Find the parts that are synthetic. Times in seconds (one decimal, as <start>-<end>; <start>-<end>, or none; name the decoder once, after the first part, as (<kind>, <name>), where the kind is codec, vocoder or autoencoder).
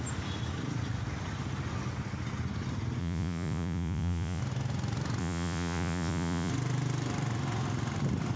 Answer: 3.0-4.4 (vocoder, Vocos); 5.2-6.5